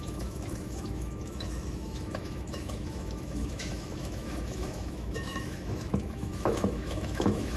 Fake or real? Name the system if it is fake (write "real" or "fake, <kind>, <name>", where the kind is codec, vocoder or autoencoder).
fake, autoencoder, DAC-VAE